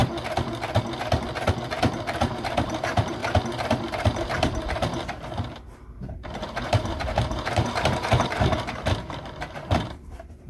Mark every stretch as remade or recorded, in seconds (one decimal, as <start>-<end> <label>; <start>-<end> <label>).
0.0-1.8 recorded; 1.8-3.2 remade; 3.2-3.9 recorded; 3.9-10.5 remade